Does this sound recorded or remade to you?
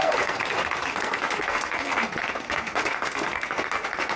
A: remade